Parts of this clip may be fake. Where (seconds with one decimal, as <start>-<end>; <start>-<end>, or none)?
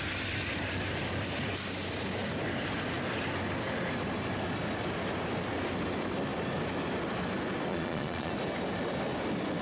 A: 7.7-8.3